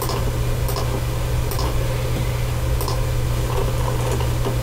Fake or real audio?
real